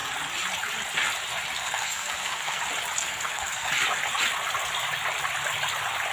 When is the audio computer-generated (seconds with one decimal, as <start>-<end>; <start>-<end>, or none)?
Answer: 1.6-2.6; 3.0-3.7

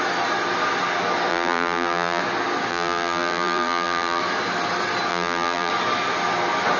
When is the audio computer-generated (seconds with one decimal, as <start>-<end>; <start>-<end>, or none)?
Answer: 1.3-2.2; 2.7-4.2; 5.1-5.7